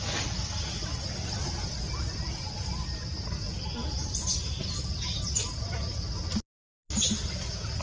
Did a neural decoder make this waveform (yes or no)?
no